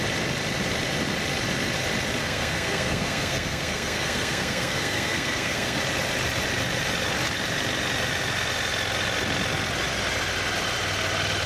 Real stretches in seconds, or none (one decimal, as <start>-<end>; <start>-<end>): 0.0-2.2; 5.8-11.5